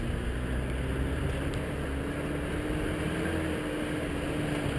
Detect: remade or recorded recorded